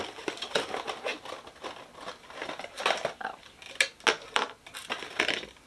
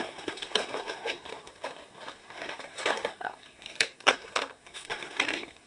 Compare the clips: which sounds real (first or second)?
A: first